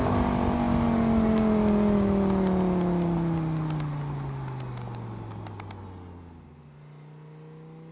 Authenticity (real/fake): real